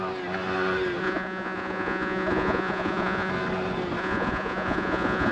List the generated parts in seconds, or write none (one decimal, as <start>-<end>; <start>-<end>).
1.0-3.3; 4.0-5.3